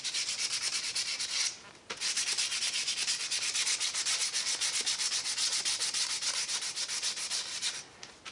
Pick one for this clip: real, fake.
real